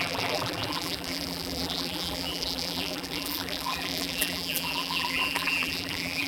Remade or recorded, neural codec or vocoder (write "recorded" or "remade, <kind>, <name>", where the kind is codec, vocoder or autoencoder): remade, vocoder, BigVGAN v2